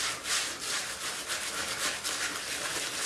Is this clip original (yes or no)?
yes